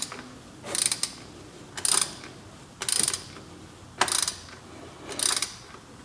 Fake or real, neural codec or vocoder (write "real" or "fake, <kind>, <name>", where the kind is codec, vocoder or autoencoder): real